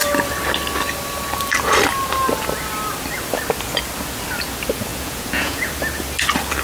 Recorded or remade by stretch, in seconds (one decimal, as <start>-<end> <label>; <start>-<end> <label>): 0.0-4.9 recorded; 4.9-5.7 remade; 5.7-6.6 recorded

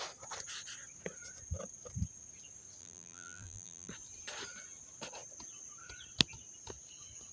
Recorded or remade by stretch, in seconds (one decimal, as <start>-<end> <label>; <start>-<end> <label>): 0.0-2.8 recorded; 2.8-3.9 remade; 3.9-7.3 recorded

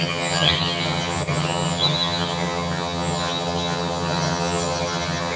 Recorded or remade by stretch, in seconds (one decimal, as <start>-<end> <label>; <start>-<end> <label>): 0.0-5.4 remade

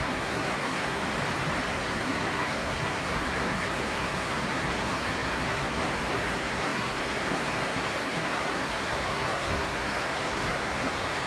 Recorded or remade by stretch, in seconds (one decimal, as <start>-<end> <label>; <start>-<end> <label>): 0.0-1.0 remade; 1.0-1.7 recorded; 1.7-11.3 remade

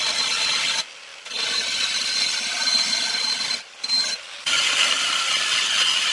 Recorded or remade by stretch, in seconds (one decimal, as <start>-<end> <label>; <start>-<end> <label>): 0.0-6.1 recorded

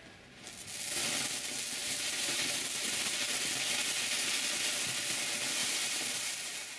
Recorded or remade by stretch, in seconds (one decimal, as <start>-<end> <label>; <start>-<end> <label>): 0.0-1.8 recorded; 1.8-2.4 remade; 2.4-5.6 recorded; 5.6-6.8 remade